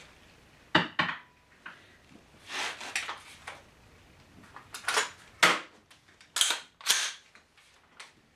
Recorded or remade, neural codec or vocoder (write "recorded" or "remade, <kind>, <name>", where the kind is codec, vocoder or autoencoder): recorded